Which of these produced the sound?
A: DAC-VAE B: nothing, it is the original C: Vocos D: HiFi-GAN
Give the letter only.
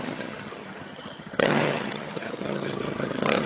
D